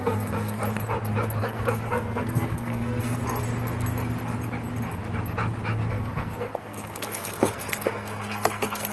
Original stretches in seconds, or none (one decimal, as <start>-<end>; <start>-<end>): 0.6-1.4; 3.2-5.9